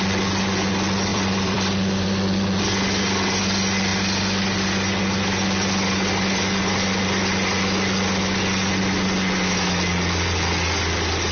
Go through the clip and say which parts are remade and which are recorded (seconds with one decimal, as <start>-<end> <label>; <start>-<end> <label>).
0.0-1.1 recorded; 1.1-2.6 remade; 2.6-11.3 recorded